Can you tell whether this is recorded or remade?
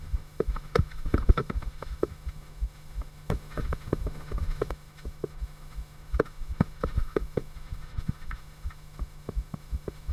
remade